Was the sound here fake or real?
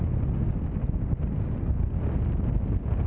real